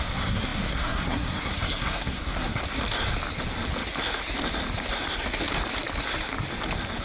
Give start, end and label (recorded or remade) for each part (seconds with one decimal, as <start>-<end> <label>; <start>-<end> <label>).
0.0-2.6 remade; 2.6-7.0 recorded

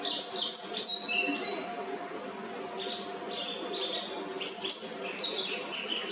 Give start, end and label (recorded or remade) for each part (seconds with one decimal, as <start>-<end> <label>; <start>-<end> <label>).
0.0-6.1 recorded

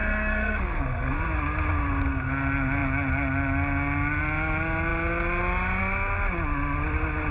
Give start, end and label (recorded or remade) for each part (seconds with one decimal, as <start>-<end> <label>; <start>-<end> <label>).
0.0-1.2 remade; 1.2-7.3 recorded

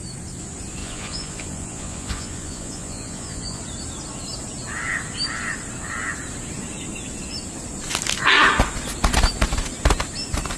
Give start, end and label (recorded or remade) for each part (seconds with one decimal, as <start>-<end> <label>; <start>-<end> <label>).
0.0-0.8 recorded; 0.8-3.6 remade; 3.6-10.6 recorded

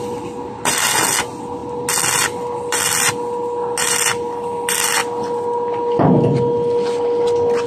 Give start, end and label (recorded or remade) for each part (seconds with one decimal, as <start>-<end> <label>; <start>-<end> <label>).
0.0-7.7 recorded

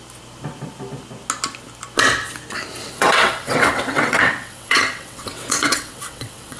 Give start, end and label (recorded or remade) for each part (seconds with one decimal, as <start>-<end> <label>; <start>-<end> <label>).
0.0-2.8 recorded; 2.8-6.6 remade